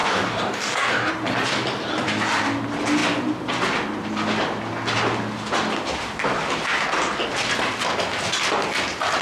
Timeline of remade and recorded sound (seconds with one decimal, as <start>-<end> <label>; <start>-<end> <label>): 0.0-1.1 remade; 1.1-9.2 recorded